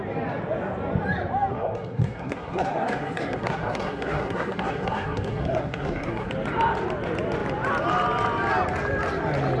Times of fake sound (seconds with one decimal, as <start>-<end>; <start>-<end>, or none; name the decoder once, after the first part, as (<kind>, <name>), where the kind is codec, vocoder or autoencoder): 1.5-6.3 (codec, SNAC)